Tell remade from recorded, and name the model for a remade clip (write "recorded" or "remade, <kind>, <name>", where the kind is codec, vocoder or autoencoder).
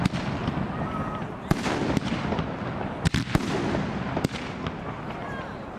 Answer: recorded